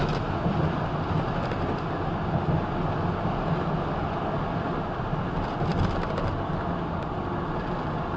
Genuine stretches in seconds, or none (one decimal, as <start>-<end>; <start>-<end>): 0.0-8.2